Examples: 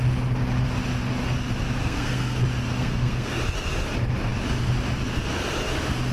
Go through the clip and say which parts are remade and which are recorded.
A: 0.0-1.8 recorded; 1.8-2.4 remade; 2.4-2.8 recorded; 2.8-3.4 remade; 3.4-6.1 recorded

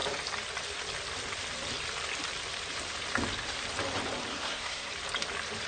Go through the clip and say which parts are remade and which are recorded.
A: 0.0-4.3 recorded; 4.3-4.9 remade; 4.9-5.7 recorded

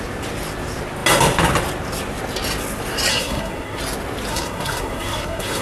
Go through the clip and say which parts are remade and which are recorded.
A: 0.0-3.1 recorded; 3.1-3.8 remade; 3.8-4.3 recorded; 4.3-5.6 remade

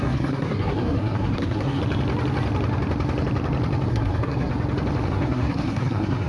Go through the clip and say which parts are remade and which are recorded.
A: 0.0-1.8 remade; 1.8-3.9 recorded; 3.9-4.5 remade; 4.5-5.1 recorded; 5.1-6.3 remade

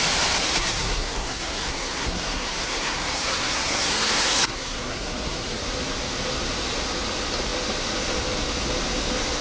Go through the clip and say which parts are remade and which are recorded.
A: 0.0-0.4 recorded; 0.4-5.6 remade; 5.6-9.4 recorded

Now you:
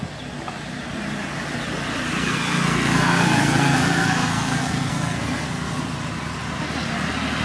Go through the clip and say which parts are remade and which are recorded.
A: 0.0-2.1 recorded; 2.1-5.8 remade; 5.8-7.4 recorded

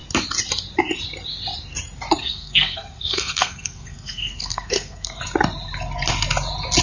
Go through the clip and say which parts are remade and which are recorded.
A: 0.0-2.2 recorded; 2.2-5.2 remade; 5.2-6.8 recorded

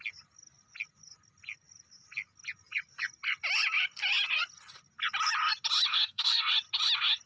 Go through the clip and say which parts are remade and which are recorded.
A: 0.0-5.9 recorded; 5.9-6.5 remade; 6.5-7.3 recorded